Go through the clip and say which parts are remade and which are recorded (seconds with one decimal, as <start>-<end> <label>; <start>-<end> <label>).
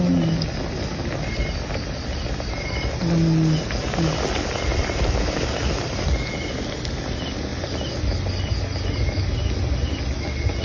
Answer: 0.0-4.7 recorded; 4.7-6.1 remade; 6.1-10.6 recorded